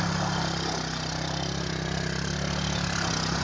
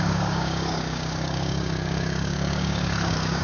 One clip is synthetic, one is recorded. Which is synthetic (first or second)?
second